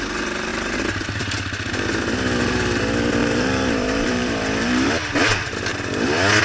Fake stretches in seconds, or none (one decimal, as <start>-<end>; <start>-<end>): 3.2-4.9